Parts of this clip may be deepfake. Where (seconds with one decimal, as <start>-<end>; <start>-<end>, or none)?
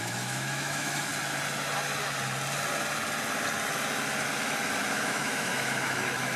0.0-1.1; 4.9-6.4